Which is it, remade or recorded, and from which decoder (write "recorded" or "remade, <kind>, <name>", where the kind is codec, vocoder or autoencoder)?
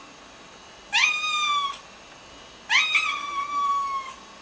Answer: recorded